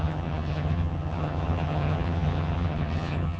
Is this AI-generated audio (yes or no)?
yes